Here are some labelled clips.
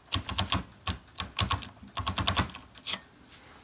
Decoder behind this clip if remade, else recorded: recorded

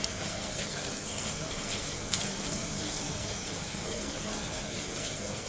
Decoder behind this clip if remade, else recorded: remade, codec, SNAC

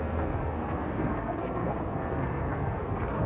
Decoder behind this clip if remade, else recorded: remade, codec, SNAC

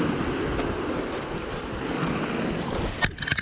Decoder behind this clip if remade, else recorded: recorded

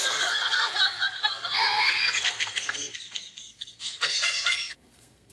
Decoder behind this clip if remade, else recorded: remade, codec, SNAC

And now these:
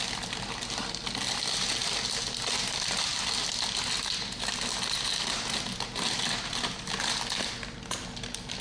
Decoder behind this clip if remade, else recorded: recorded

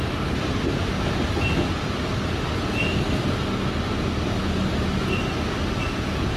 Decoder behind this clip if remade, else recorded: recorded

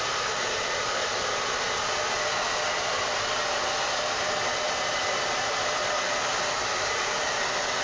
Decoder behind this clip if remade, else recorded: recorded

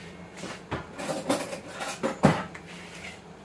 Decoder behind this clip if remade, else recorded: recorded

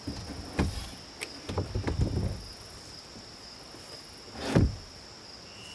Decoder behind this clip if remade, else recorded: recorded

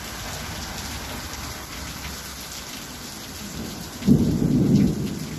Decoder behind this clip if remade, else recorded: recorded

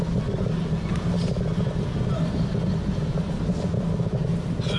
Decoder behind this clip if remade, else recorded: recorded